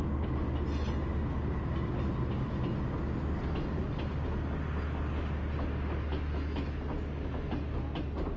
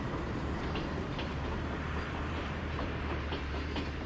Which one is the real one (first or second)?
first